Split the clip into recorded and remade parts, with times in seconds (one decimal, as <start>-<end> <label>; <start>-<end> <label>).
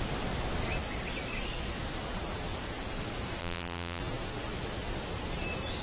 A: 0.0-3.4 recorded; 3.4-4.0 remade; 4.0-5.8 recorded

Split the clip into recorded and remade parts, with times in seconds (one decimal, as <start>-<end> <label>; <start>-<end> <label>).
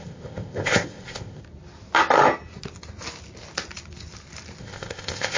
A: 0.0-1.4 remade; 1.4-4.6 recorded; 4.6-5.4 remade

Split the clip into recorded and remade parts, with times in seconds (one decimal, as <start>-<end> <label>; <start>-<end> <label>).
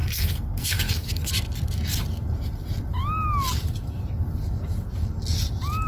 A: 0.0-1.3 remade; 1.3-5.9 recorded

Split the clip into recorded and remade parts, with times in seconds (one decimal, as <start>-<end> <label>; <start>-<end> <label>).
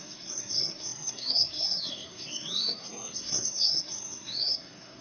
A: 0.0-5.0 remade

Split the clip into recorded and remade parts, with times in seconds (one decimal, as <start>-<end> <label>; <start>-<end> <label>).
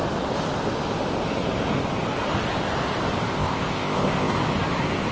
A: 0.0-3.3 recorded; 3.3-4.3 remade; 4.3-5.1 recorded